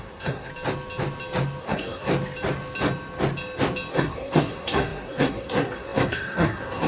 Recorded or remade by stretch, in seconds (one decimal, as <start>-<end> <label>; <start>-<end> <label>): 0.0-0.5 remade; 0.5-1.6 recorded; 1.6-2.1 remade; 2.1-3.9 recorded; 3.9-6.9 remade